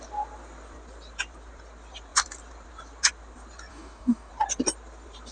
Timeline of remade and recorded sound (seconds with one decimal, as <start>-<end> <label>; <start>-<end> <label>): 0.0-3.7 recorded; 3.7-4.3 remade; 4.3-5.3 recorded